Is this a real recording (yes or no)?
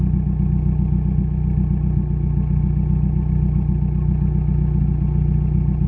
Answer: yes